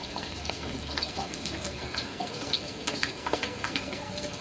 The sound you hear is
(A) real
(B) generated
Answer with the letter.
B